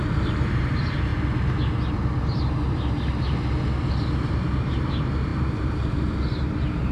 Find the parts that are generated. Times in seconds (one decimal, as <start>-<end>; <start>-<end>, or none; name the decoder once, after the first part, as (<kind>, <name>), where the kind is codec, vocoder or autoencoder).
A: 0.0-1.1 (vocoder, BigVGAN v2); 4.3-6.9